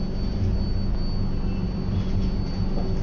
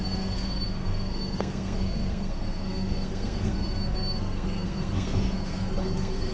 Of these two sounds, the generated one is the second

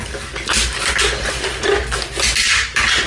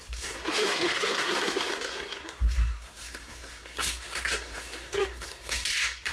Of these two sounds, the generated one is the second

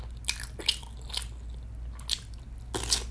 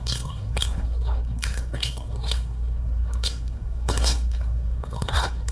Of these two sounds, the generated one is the second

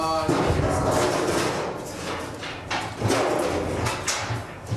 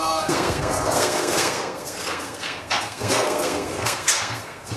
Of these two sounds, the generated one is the second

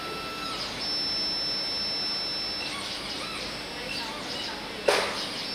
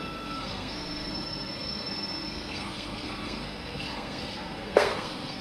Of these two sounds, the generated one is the second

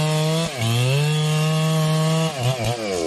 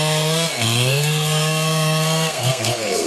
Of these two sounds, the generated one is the second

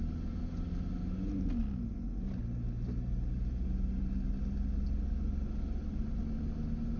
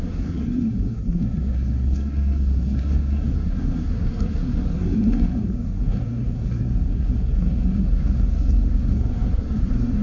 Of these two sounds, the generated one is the second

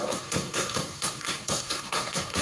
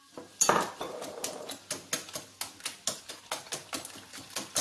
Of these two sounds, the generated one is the first